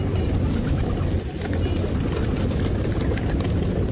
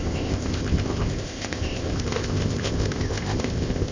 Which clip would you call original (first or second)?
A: first